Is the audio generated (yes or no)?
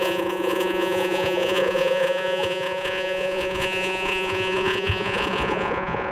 yes